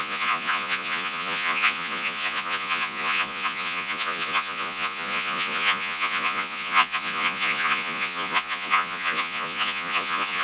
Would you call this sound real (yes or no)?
no